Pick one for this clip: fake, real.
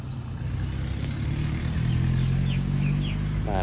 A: real